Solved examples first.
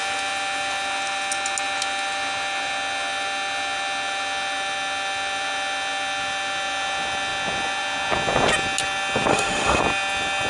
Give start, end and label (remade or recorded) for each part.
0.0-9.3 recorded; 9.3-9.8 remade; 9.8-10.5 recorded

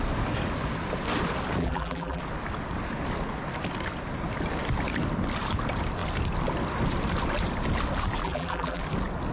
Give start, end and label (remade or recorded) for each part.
0.0-1.6 recorded; 1.6-2.2 remade; 2.2-8.2 recorded; 8.2-8.8 remade; 8.8-9.3 recorded

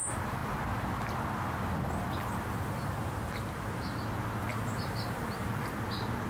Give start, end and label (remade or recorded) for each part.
0.0-2.5 recorded; 2.5-4.0 remade; 4.0-4.5 recorded; 4.5-5.5 remade; 5.5-6.3 recorded